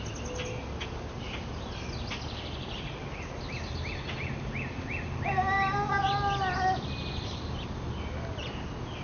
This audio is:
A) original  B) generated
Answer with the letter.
A